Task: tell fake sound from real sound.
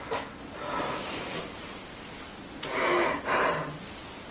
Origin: real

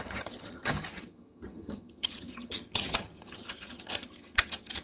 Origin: fake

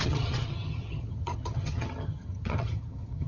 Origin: fake